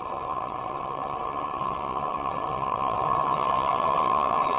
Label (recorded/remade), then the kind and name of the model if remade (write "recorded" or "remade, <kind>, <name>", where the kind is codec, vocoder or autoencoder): remade, vocoder, WaveNeXt